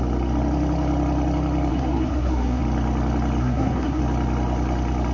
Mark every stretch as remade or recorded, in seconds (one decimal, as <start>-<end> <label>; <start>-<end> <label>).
0.0-1.7 recorded; 1.7-2.6 remade; 2.6-3.4 recorded; 3.4-4.0 remade; 4.0-5.1 recorded